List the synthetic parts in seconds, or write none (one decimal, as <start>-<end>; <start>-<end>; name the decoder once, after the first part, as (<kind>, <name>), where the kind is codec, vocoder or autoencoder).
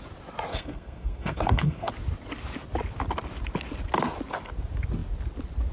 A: 0.5-1.9 (codec, SNAC)